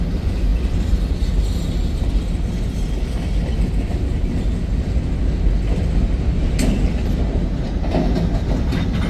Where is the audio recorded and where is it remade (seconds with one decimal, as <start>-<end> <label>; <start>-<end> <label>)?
0.0-0.5 recorded; 0.5-1.1 remade; 1.1-9.1 recorded